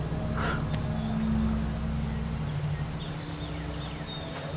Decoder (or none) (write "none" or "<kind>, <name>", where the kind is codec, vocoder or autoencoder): none